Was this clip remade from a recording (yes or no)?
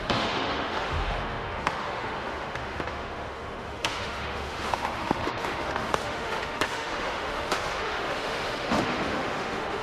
yes